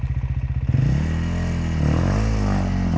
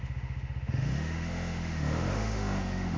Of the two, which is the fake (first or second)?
second